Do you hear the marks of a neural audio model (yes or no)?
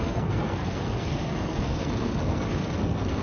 yes